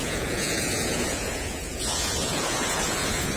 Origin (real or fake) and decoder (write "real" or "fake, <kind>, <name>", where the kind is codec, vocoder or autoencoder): fake, vocoder, Vocos